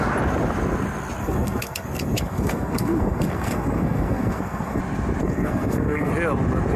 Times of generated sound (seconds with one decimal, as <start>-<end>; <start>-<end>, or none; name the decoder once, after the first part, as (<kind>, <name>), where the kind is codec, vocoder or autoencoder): 1.2-4.8 (codec, SNAC); 5.2-6.1